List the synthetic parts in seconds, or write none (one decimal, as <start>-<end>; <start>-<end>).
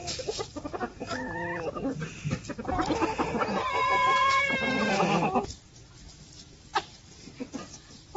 6.7-7.3